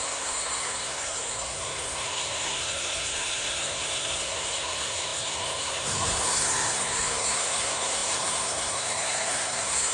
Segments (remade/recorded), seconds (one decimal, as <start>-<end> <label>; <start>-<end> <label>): 0.0-9.9 remade